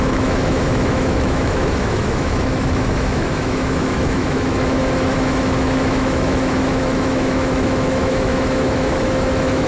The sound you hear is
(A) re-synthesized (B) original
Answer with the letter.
A